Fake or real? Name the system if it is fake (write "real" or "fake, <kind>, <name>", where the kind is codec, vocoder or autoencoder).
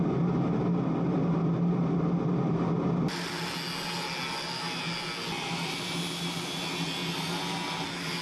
real